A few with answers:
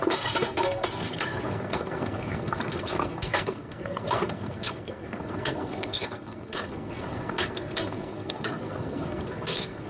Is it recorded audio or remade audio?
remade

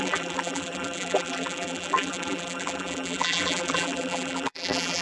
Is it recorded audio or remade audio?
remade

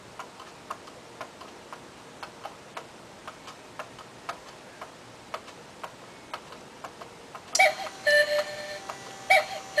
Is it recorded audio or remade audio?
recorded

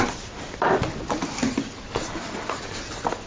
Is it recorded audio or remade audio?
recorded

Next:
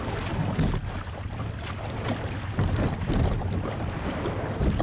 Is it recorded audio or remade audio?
recorded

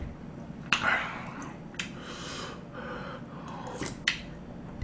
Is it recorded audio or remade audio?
recorded